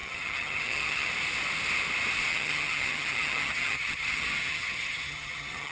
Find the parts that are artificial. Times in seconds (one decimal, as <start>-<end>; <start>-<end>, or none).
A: 0.0-1.1; 2.3-5.7